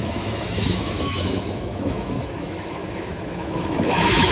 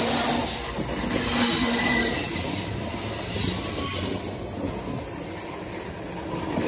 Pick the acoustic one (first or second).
second